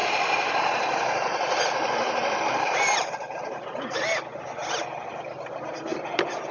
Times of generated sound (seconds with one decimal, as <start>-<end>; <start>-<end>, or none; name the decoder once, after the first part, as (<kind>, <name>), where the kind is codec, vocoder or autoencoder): 0.0-3.5 (vocoder, BigVGAN v2)